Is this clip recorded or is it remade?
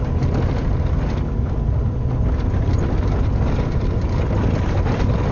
recorded